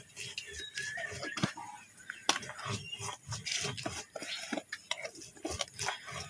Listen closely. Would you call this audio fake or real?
real